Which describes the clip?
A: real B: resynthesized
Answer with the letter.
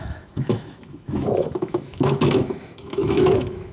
B